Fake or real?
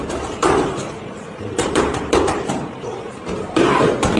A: fake